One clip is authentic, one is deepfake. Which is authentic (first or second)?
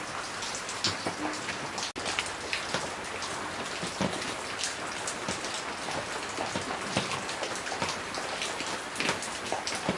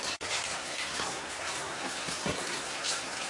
first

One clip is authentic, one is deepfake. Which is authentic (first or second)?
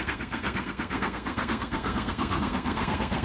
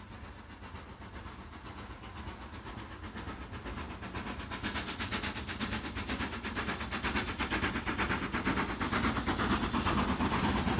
second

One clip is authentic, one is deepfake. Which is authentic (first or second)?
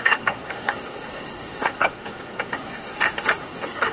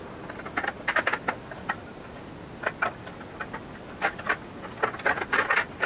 second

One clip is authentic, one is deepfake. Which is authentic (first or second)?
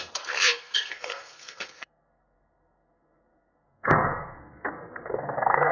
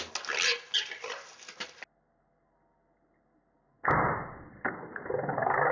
second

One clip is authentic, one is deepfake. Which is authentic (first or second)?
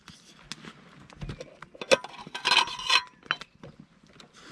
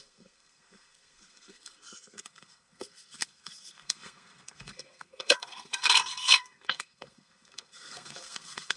first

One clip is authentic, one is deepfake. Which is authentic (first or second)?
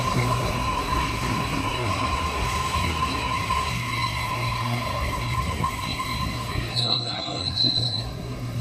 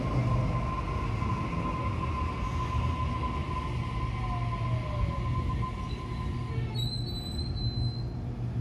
second